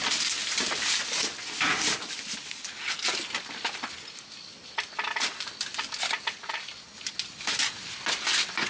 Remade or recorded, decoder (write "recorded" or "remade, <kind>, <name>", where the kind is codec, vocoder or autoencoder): recorded